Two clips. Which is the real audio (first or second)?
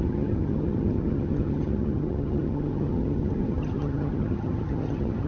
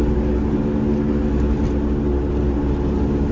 second